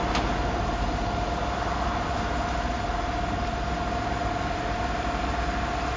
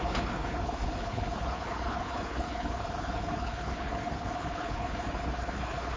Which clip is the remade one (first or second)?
second